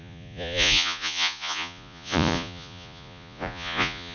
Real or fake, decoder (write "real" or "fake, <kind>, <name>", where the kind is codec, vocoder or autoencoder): fake, vocoder, Vocos